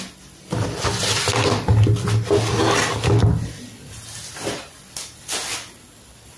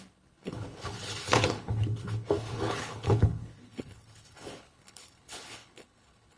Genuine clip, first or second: first